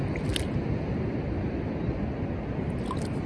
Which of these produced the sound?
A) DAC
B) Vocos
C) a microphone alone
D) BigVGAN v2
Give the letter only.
C